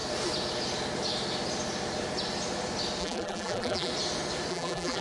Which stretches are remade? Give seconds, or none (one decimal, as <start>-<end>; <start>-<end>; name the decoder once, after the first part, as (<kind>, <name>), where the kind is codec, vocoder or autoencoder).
3.0-3.9 (vocoder, BigVGAN v2); 4.5-5.0